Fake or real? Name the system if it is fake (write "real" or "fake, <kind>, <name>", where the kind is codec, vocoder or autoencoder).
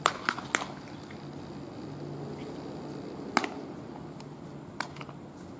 real